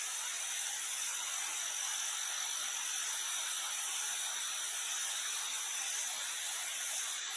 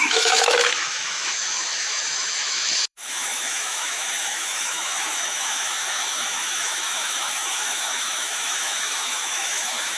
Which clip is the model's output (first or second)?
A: second